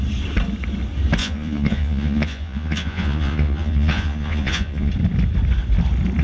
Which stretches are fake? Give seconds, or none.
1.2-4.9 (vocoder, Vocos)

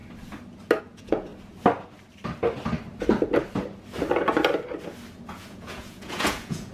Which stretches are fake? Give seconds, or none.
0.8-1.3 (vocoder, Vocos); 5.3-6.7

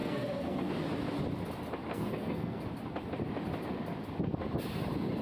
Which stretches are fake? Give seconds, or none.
0.0-0.7 (codec, SNAC); 1.9-2.6

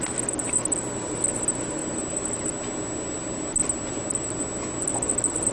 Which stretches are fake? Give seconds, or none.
none

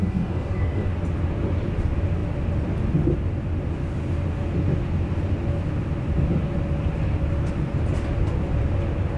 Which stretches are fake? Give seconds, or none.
0.0-0.9 (codec, DAC)

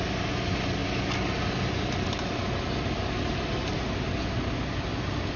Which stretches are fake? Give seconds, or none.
none

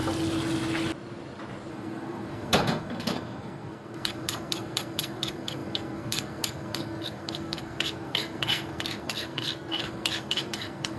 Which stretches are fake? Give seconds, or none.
1.7-11.0 (codec, SNAC)